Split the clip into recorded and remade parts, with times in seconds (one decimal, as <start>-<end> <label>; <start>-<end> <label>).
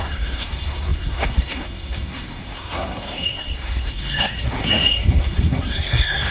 0.0-6.3 remade